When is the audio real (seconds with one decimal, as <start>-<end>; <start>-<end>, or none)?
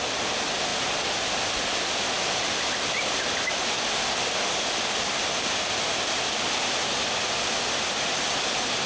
0.0-8.9